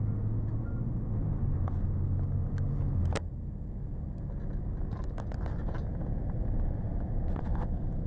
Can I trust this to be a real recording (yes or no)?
yes